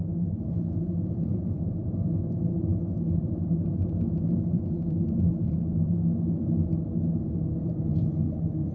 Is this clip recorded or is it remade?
remade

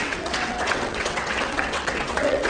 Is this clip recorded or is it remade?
remade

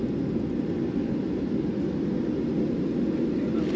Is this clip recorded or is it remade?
recorded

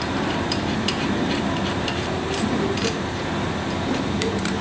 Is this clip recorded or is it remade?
remade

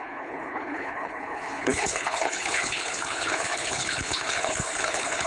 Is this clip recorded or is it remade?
remade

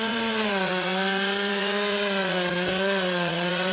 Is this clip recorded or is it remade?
remade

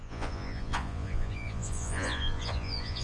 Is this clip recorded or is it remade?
remade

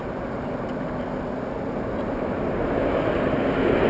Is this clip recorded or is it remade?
recorded